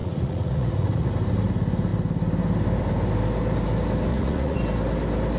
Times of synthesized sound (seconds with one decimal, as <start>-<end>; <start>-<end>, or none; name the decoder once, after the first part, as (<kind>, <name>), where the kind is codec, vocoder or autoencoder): 0.0-1.1 (vocoder, Vocos); 4.1-4.6